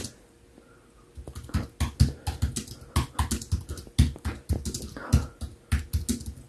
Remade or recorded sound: recorded